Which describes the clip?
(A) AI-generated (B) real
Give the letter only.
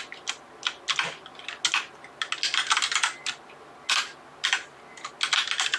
B